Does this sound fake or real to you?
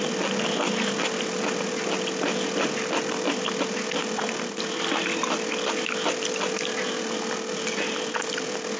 real